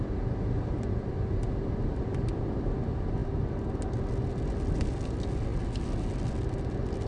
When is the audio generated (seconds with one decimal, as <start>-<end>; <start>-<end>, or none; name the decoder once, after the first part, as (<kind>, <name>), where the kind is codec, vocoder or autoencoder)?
none